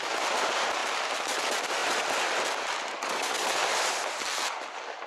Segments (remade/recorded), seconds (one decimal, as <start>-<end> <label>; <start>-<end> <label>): 0.0-5.1 recorded